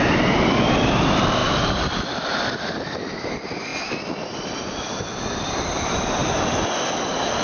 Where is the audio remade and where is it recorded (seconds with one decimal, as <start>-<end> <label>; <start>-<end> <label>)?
0.0-7.4 recorded